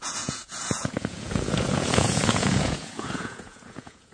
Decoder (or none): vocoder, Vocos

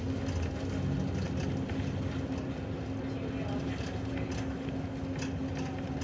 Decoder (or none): none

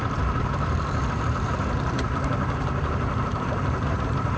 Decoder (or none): vocoder, BigVGAN v2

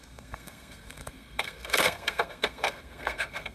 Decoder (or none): codec, SNAC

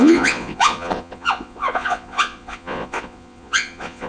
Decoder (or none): vocoder, Vocos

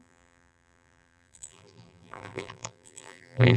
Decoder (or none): vocoder, BigVGAN v2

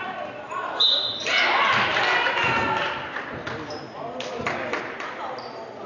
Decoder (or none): none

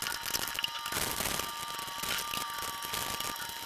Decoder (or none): none